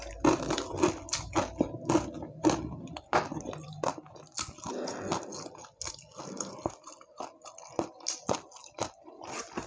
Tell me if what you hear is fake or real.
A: real